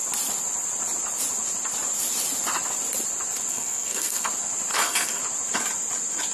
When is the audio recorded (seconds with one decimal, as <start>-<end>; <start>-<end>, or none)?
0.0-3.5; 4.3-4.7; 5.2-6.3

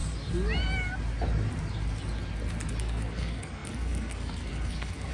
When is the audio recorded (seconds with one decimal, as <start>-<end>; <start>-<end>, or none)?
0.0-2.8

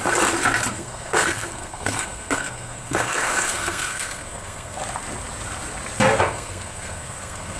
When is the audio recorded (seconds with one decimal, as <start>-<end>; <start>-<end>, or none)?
0.0-0.7; 4.8-6.2